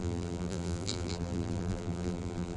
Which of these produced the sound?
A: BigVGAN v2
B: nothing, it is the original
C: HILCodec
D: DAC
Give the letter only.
A